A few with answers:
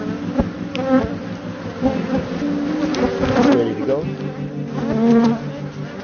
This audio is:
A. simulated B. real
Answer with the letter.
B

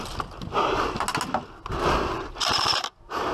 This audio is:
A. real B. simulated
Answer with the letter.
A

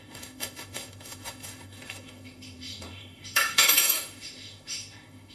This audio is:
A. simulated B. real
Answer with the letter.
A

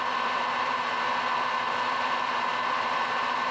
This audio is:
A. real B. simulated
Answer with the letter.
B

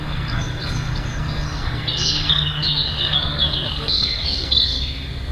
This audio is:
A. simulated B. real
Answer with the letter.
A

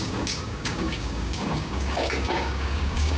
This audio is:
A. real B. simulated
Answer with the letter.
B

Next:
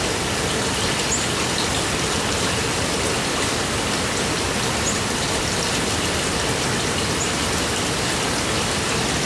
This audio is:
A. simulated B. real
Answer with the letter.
B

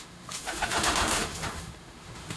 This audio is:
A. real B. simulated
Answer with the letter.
B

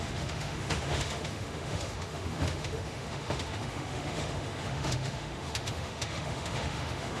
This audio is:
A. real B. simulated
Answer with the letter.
B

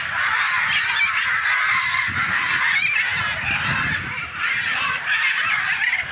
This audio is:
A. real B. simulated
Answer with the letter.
A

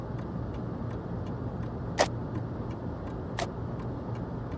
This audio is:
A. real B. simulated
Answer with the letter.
A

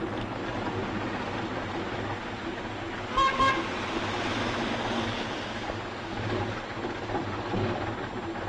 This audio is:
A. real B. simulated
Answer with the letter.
A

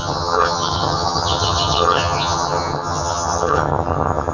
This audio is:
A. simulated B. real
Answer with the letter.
A